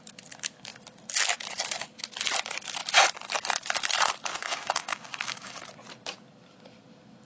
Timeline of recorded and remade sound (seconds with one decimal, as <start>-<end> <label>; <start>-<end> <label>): 0.0-4.4 recorded; 4.4-5.6 remade; 5.6-7.2 recorded